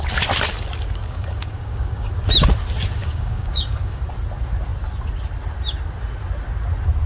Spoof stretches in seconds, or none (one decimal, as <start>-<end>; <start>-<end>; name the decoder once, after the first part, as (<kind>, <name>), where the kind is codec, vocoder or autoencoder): 1.0-2.1 (codec, DAC); 3.0-4.0